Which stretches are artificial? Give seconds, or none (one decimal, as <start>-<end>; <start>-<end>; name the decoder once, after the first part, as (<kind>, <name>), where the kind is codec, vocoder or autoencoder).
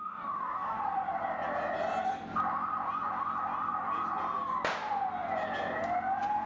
0.0-0.8 (codec, DAC)